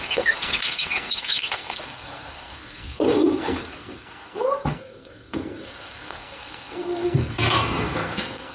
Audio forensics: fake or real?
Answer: fake